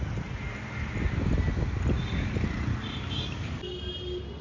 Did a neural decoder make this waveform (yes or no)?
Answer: no